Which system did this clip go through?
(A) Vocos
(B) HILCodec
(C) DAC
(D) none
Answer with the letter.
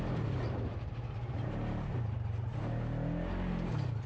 D